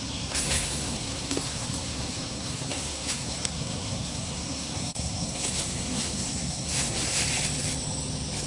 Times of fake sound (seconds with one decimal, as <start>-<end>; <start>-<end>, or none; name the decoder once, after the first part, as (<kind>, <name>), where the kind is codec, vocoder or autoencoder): 0.0-7.2 (codec, SNAC)